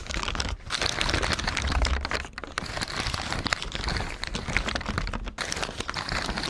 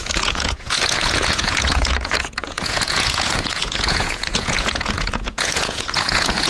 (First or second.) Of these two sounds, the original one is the first